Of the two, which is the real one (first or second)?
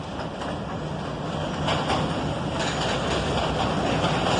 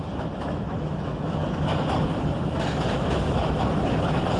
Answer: first